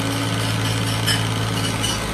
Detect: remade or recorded recorded